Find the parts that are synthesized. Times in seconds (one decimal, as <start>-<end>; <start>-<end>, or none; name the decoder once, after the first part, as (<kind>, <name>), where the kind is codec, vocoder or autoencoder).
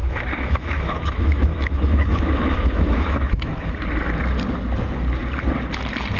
0.0-3.7 (autoencoder, DAC-VAE)